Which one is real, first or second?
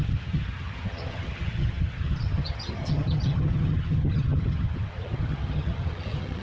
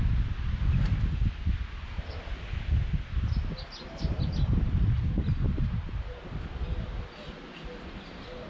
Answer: second